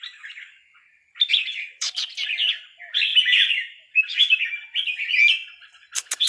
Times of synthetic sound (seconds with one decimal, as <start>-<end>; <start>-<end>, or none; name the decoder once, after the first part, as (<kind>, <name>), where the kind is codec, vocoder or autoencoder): 1.3-1.9 (vocoder, BigVGAN v2); 3.1-4.4